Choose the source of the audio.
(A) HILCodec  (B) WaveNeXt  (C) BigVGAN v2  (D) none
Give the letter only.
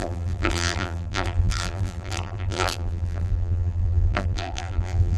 C